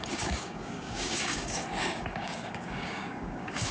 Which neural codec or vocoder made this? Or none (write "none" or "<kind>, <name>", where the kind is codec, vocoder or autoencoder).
codec, DAC